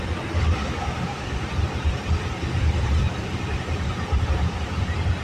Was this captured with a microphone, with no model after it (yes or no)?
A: no